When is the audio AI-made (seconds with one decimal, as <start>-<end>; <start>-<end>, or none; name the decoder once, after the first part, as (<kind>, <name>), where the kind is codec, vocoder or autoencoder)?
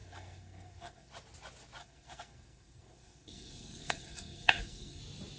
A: 0.0-1.1 (codec, SNAC); 1.8-5.0